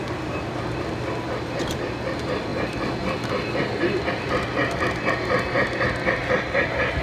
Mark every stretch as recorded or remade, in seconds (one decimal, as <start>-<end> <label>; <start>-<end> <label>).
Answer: 0.0-7.0 recorded